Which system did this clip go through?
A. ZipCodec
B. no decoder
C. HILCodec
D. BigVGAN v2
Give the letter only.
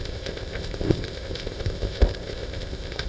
A